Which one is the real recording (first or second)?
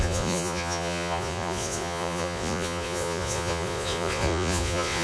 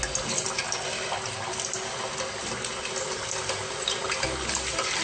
second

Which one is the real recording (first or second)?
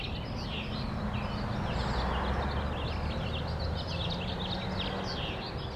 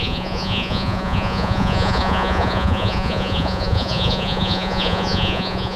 first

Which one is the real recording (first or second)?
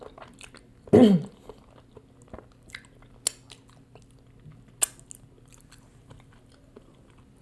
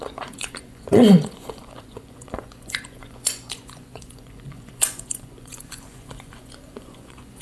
first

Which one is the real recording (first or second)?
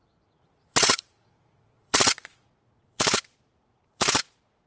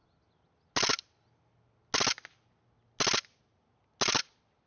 second